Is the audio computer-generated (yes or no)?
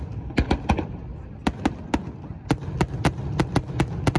no